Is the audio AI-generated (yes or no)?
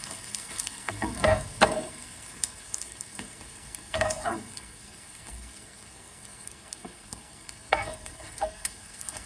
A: yes